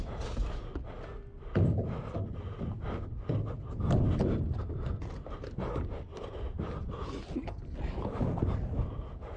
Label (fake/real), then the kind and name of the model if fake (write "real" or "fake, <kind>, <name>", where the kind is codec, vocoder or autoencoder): real